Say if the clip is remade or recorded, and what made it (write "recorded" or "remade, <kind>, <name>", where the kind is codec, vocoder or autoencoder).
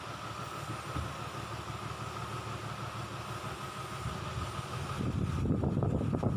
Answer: recorded